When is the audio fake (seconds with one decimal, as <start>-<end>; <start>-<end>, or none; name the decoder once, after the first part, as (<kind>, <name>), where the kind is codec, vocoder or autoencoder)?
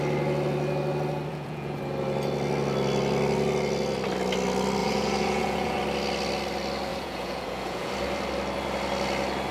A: 1.3-1.8 (vocoder, Vocos); 4.8-5.8; 6.9-7.9